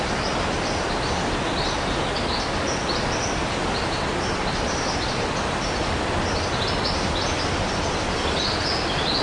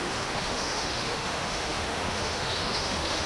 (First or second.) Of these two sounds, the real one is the first